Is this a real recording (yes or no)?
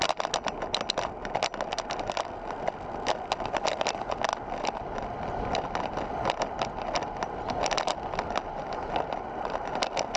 yes